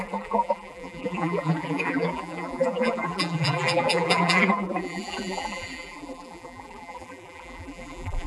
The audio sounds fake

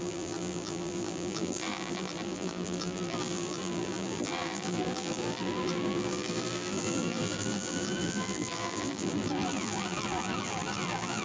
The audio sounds fake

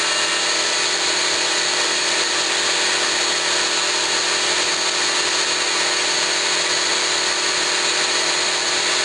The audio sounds real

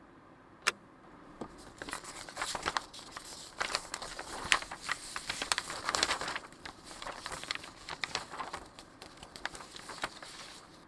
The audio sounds fake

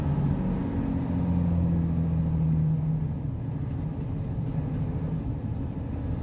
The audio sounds real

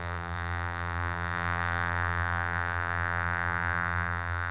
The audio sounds fake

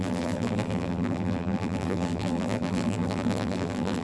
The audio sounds fake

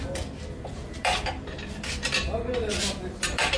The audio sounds fake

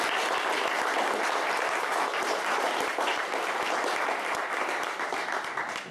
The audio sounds real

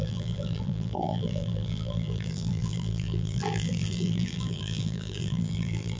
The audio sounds fake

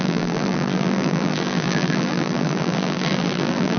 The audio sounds fake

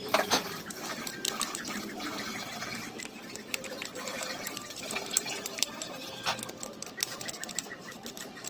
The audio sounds fake